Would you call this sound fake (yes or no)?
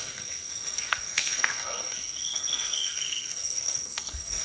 yes